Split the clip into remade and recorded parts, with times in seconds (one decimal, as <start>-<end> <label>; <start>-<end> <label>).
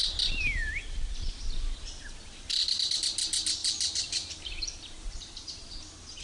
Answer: 0.0-3.6 recorded; 3.6-5.7 remade; 5.7-6.2 recorded